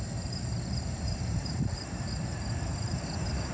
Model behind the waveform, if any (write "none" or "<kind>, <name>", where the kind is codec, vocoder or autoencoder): vocoder, BigVGAN v2